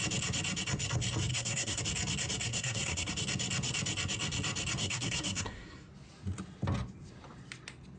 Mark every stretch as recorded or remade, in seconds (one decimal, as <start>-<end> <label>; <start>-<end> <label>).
0.0-1.3 recorded; 1.3-1.8 remade; 1.8-2.5 recorded; 2.5-3.1 remade; 3.1-4.8 recorded; 4.8-5.9 remade; 5.9-8.0 recorded